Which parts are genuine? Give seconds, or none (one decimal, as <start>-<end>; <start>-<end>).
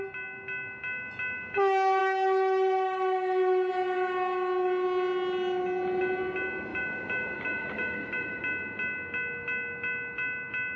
0.0-6.7; 8.4-10.8